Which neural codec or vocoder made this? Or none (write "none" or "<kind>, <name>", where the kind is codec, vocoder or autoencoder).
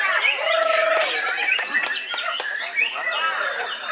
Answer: none